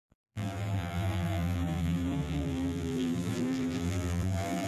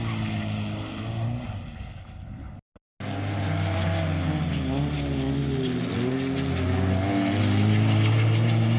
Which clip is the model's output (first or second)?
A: first